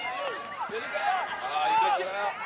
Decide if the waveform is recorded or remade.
remade